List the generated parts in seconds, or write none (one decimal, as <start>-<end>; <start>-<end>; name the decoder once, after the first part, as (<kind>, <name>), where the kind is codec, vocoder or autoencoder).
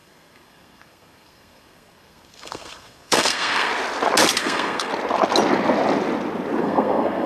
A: 0.0-3.7 (codec, SNAC); 4.4-4.9; 6.6-7.3